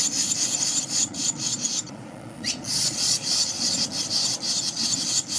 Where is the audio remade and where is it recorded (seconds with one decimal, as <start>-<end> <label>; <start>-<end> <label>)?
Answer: 0.0-0.7 recorded; 0.7-3.9 remade; 3.9-5.4 recorded